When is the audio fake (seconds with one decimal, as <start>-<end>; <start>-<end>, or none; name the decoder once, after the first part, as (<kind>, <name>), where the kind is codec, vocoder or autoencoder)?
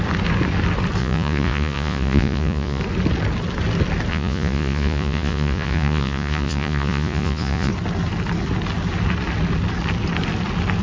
1.0-2.8 (vocoder, Vocos); 4.1-7.7